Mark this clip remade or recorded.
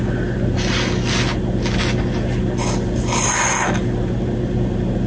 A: recorded